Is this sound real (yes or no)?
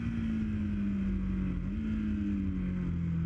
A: yes